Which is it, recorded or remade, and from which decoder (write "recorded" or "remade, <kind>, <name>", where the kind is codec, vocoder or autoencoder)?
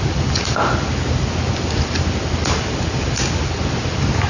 recorded